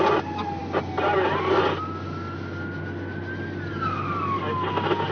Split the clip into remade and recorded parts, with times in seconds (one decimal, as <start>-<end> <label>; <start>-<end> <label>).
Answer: 0.0-5.1 recorded